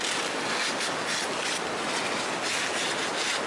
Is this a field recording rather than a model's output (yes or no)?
yes